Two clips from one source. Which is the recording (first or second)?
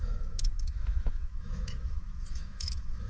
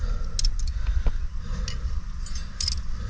second